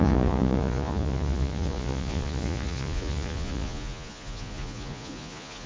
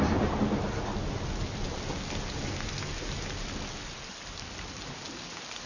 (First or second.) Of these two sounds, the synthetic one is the first